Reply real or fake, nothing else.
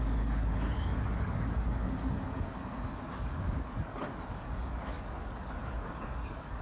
fake